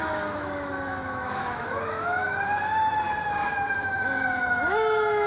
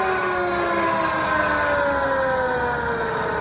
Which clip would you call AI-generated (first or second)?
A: first